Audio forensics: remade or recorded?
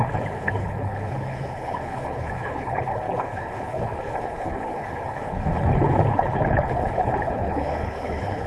remade